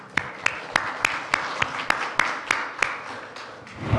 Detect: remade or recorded recorded